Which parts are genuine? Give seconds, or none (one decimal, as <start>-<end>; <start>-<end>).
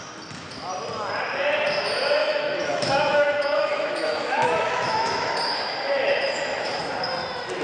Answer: 0.0-2.2; 6.8-7.6